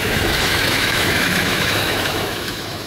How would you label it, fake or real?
fake